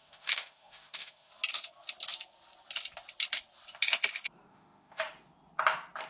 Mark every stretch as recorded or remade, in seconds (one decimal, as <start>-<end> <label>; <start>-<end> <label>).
0.0-1.3 remade; 1.3-4.5 recorded; 4.5-5.1 remade; 5.1-6.1 recorded